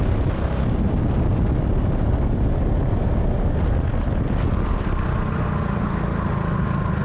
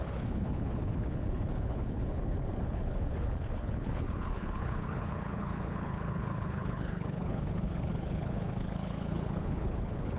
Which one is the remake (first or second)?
second